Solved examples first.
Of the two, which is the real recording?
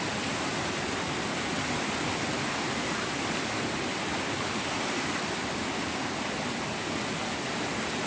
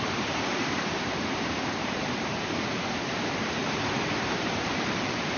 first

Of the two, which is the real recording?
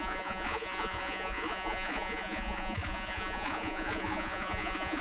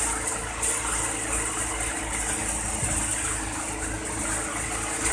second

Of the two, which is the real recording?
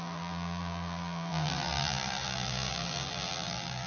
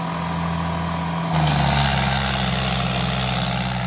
second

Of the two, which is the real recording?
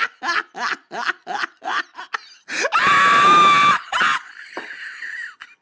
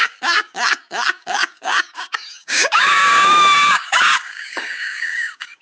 first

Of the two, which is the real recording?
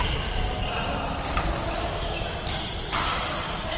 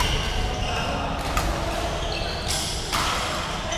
second